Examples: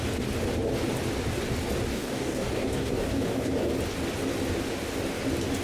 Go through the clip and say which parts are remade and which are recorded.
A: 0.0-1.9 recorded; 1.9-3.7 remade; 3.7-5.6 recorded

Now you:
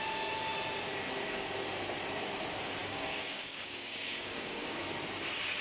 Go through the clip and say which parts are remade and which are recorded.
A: 0.0-2.8 recorded; 2.8-4.8 remade; 4.8-5.6 recorded

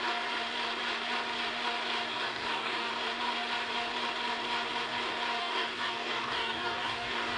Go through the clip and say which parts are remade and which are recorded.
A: 0.0-2.1 recorded; 2.1-2.9 remade; 2.9-5.4 recorded; 5.4-7.4 remade

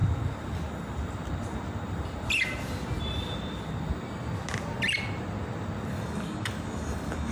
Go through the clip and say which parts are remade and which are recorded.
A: 0.0-5.9 recorded; 5.9-7.3 remade